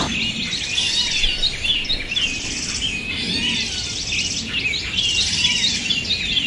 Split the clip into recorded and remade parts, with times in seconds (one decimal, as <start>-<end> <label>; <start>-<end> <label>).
0.0-6.5 recorded

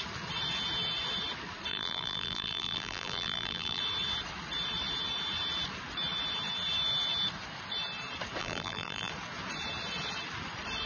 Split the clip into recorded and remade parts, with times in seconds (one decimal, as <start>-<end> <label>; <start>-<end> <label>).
0.0-1.7 recorded; 1.7-3.8 remade; 3.8-8.4 recorded; 8.4-9.1 remade; 9.1-10.9 recorded

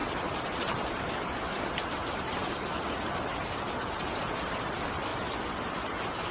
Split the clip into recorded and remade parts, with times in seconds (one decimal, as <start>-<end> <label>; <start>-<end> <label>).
0.0-3.5 remade; 3.5-5.1 recorded; 5.1-5.7 remade; 5.7-6.3 recorded

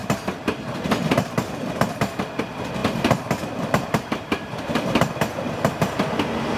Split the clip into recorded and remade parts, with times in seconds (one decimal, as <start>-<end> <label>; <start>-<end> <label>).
0.0-2.4 remade; 2.4-2.8 recorded; 2.8-5.7 remade; 5.7-6.6 recorded

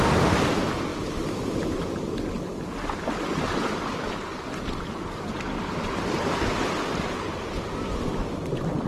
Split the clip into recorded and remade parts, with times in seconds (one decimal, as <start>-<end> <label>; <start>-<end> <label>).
0.0-8.9 recorded

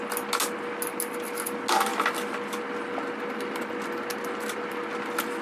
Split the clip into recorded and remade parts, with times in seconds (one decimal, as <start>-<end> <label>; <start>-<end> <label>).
0.0-5.4 recorded

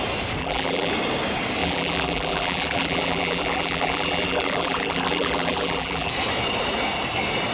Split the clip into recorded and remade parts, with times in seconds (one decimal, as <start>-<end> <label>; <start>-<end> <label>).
0.0-0.4 recorded; 0.4-0.9 remade; 0.9-1.6 recorded; 1.6-6.1 remade; 6.1-7.5 recorded

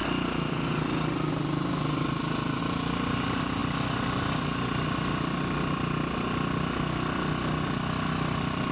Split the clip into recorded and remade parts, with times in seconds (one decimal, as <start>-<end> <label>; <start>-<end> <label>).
0.0-2.6 recorded; 2.6-3.6 remade; 3.6-8.7 recorded